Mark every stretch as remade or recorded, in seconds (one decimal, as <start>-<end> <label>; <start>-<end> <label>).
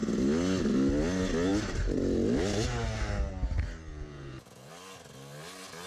0.0-3.9 recorded; 3.9-4.7 remade; 4.7-5.9 recorded